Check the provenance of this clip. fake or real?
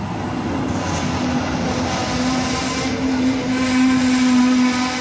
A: real